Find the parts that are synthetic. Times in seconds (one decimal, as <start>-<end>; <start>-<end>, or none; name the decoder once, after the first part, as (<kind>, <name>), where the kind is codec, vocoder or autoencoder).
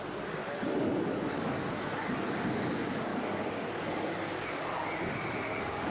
0.4-1.6 (codec, DAC); 3.1-5.9